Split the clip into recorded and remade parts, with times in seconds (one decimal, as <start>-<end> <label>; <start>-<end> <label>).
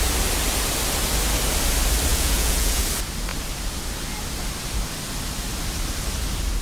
0.0-2.1 recorded; 2.1-2.8 remade; 2.8-6.6 recorded